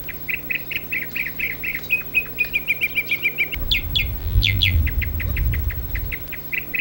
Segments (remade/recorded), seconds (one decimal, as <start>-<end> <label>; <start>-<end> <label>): 0.0-4.2 recorded; 4.2-4.8 remade; 4.8-6.8 recorded